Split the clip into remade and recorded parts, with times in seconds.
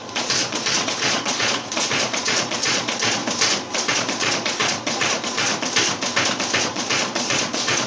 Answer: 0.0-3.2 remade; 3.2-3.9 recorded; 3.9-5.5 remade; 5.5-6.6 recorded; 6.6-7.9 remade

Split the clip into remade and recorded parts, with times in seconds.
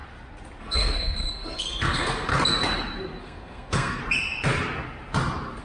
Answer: 0.0-0.6 recorded; 0.6-2.3 remade; 2.3-3.2 recorded; 3.2-4.0 remade; 4.0-5.6 recorded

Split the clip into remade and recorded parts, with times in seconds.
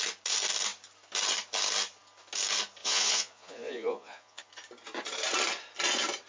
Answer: 0.0-2.8 recorded; 2.8-4.5 remade; 4.5-6.3 recorded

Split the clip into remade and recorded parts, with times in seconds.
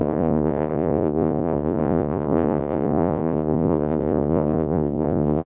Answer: 0.0-5.5 remade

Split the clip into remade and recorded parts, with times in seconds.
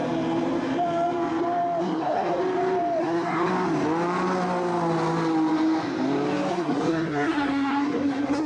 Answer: 0.0-1.8 recorded; 1.8-2.4 remade; 2.4-3.0 recorded; 3.0-3.5 remade; 3.5-6.5 recorded; 6.5-8.5 remade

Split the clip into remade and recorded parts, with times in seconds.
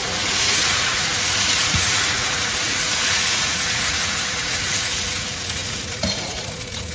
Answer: 0.0-6.9 remade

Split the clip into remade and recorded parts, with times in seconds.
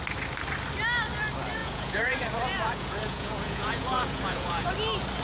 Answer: 0.0-1.6 recorded; 1.6-4.7 remade; 4.7-5.2 recorded